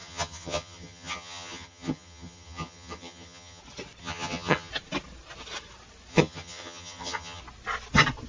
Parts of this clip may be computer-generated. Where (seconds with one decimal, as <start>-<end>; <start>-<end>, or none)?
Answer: 0.0-3.6; 4.0-4.7; 6.1-7.4